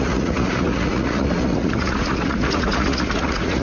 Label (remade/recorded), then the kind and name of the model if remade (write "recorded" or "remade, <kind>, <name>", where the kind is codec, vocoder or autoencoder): remade, vocoder, Vocos